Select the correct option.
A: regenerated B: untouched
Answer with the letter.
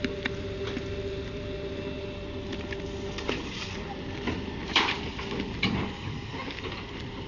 B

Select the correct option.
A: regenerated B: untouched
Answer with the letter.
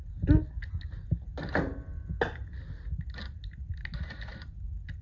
B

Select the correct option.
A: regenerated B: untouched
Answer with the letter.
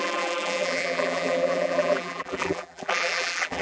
A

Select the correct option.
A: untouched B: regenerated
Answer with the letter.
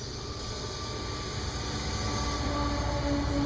A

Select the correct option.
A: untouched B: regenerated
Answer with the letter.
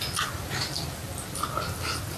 A